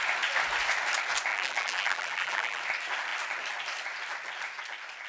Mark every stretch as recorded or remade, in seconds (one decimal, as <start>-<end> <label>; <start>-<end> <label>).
0.0-1.3 recorded; 1.3-2.6 remade; 2.6-5.1 recorded